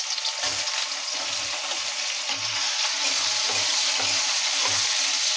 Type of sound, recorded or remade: recorded